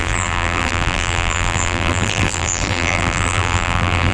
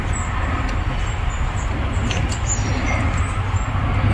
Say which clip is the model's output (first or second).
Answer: first